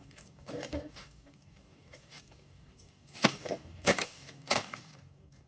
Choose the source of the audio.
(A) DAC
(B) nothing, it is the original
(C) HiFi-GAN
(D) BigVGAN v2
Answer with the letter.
A